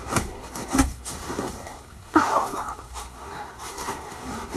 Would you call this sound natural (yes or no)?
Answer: no